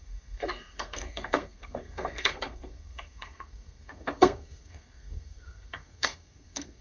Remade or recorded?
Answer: remade